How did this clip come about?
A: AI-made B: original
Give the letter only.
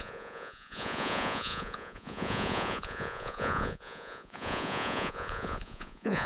A